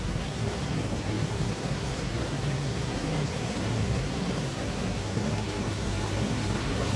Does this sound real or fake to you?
fake